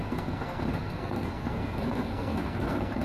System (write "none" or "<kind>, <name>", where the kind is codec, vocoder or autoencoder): codec, SNAC